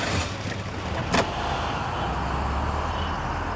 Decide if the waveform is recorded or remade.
recorded